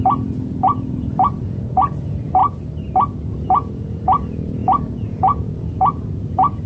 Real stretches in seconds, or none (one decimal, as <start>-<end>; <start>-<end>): 2.4-3.3